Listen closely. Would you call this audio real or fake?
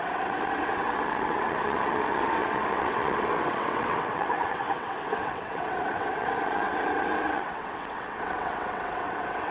fake